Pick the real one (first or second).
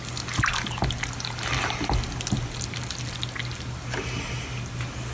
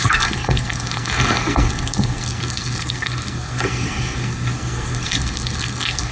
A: first